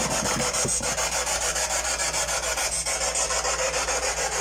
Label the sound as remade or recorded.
recorded